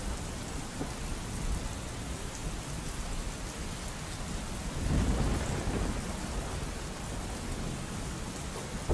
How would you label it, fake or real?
real